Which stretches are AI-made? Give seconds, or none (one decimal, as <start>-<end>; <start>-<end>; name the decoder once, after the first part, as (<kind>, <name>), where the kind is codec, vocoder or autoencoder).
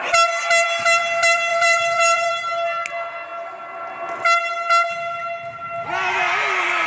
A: 1.5-2.3 (vocoder, Vocos)